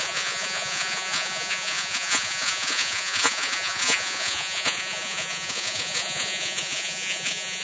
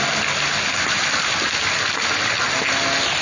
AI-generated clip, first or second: first